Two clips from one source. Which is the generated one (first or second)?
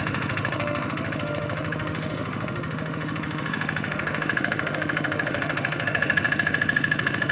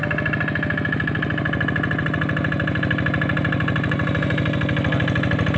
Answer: first